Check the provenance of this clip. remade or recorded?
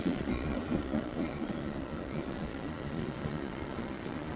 remade